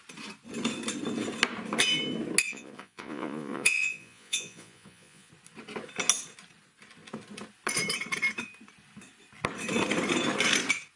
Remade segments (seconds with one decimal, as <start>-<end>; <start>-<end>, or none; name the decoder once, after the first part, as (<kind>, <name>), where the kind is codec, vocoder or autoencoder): 2.5-5.3 (vocoder, Vocos)